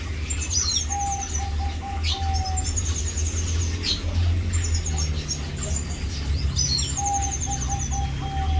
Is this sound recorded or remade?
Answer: recorded